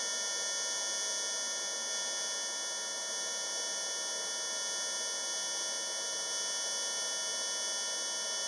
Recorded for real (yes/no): yes